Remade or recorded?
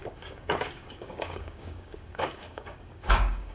remade